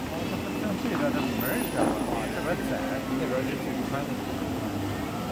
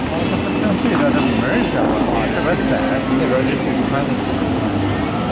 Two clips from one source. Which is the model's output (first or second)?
first